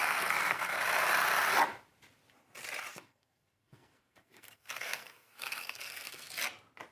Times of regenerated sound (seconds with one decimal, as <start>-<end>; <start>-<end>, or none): 0.0-0.8; 2.9-6.3